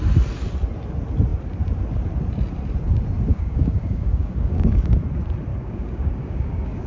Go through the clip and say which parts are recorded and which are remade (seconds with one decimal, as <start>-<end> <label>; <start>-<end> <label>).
0.0-3.3 recorded; 3.3-4.9 remade; 4.9-5.5 recorded; 5.5-6.9 remade